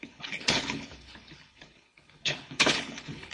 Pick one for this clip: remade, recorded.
remade